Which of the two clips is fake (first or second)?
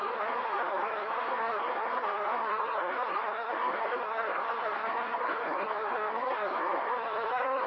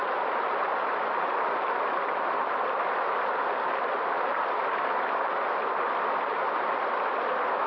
first